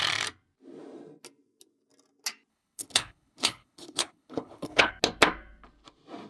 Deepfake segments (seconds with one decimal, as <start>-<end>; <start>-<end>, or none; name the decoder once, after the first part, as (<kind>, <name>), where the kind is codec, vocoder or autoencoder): 2.5-4.9 (codec, HILCodec)